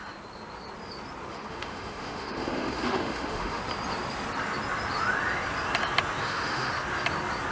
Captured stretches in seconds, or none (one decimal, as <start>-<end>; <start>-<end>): 0.0-1.3; 3.6-6.2; 6.7-7.5